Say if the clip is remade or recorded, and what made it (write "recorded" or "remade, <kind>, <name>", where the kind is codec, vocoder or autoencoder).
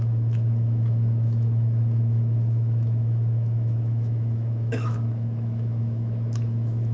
remade, autoencoder, DAC-VAE